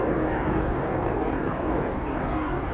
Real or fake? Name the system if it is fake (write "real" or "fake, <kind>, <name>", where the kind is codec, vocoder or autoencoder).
fake, codec, DAC